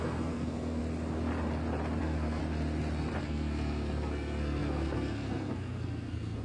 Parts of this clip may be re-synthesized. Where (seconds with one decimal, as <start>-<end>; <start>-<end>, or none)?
0.0-0.8; 2.0-2.4; 3.2-6.4